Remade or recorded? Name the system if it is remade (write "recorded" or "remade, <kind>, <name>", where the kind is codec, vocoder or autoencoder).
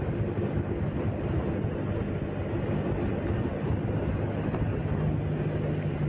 recorded